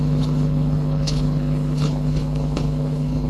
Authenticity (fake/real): fake